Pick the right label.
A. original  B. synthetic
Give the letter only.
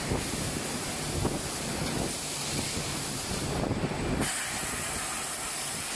A